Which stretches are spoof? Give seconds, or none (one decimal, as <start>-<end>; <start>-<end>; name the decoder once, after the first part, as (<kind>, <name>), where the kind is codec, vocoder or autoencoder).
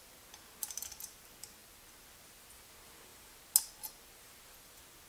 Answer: none